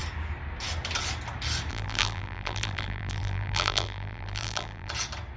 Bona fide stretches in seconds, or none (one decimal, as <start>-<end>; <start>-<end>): 0.0-1.7; 4.9-5.4

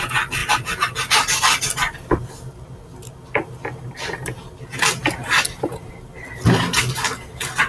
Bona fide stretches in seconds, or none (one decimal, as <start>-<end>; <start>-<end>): 0.0-0.4; 2.3-7.7

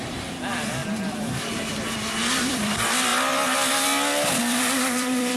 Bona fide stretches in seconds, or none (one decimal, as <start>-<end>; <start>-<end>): 0.8-2.4; 3.1-4.4

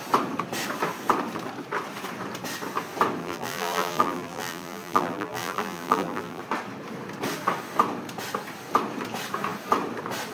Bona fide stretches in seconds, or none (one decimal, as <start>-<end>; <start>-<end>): 0.0-3.2; 6.4-10.3

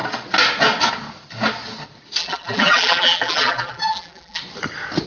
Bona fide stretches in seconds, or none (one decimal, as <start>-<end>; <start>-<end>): 0.0-2.2; 4.4-5.1

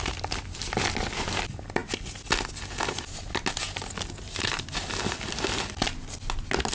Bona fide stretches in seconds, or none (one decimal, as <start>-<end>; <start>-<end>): 0.0-6.7

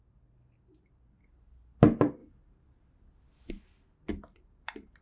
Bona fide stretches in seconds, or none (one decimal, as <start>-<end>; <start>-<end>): 0.0-4.1